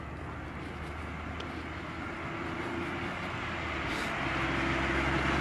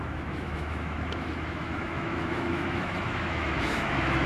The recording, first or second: first